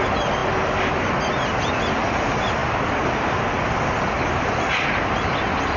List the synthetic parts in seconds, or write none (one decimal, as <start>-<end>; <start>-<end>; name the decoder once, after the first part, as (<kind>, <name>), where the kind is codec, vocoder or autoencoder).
none